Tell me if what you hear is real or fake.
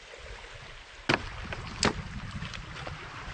real